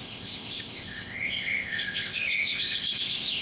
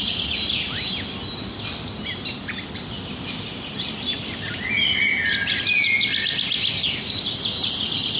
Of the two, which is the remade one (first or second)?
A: first